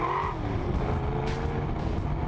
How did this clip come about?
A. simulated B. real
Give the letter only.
B